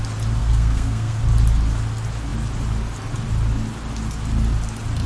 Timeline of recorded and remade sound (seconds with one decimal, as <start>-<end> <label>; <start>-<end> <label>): 0.0-0.4 recorded; 0.4-1.2 remade; 1.2-5.1 recorded